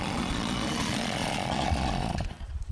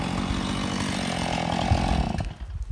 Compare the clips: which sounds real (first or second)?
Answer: second